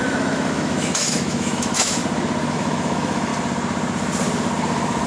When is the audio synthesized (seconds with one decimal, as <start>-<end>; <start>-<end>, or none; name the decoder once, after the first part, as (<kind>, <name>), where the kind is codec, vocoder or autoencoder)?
0.0-2.0 (autoencoder, DAC-VAE); 2.5-3.3